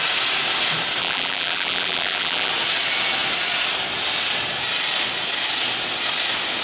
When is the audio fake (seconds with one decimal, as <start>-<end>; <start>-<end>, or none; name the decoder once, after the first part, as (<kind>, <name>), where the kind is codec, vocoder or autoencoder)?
1.0-2.5 (vocoder, BigVGAN v2)